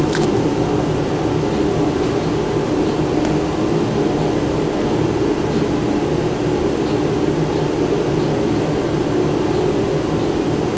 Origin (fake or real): real